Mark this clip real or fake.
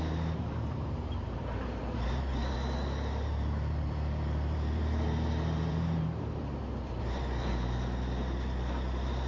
fake